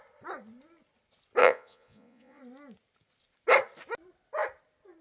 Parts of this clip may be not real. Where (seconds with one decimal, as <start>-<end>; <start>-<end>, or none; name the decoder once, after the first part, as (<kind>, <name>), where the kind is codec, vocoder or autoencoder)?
1.4-2.4 (vocoder, Vocos)